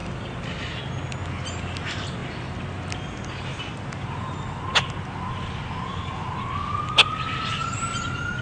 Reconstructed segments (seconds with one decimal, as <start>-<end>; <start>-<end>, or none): none

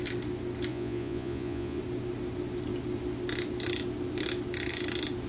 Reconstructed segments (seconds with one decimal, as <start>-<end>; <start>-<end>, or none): 0.7-1.8

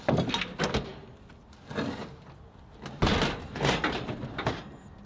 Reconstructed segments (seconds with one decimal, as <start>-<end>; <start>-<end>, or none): none

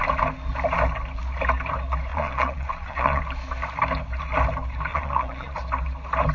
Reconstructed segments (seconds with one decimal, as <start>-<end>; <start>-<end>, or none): 2.1-3.2; 4.9-5.6

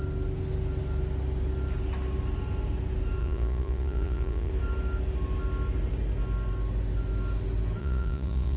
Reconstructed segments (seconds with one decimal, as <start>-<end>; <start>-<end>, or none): 3.2-4.5; 7.8-8.6

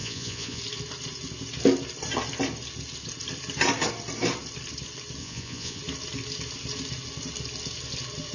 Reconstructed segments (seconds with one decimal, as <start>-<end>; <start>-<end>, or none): 0.0-0.6; 5.2-5.8